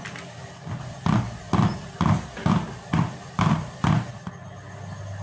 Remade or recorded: recorded